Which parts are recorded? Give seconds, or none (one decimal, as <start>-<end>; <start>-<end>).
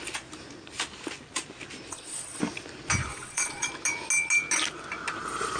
0.0-1.9; 2.4-3.1; 3.7-5.6